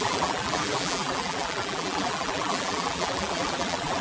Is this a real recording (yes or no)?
no